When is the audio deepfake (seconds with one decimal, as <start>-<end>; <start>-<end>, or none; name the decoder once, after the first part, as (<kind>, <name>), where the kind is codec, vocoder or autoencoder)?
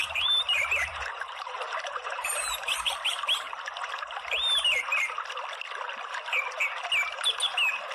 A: 0.0-2.7 (vocoder, BigVGAN v2)